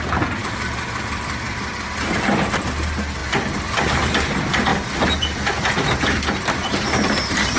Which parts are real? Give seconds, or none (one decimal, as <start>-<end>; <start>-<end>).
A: 0.0-0.4; 2.5-3.2; 4.1-4.7